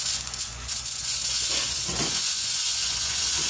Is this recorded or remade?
remade